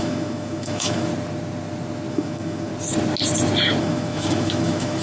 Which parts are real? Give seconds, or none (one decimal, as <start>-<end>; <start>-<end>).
1.1-2.1; 2.7-3.8